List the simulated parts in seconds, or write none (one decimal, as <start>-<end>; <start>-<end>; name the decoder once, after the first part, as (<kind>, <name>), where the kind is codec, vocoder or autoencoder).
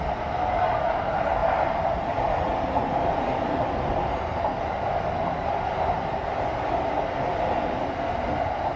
1.4-4.7 (vocoder, BigVGAN v2)